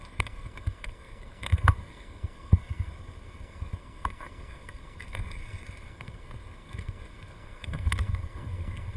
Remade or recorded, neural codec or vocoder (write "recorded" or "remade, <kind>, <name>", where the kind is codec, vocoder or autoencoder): remade, codec, SNAC